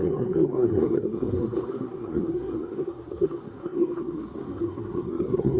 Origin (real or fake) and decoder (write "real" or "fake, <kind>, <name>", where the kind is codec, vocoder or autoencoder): fake, codec, SNAC